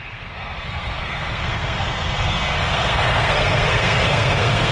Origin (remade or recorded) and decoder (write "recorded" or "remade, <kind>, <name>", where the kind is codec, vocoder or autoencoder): remade, codec, SNAC